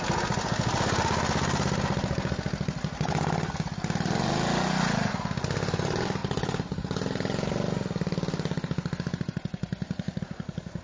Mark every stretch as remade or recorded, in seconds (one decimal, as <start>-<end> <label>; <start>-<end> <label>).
0.0-10.8 recorded